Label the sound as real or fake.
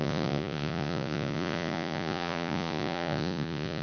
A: fake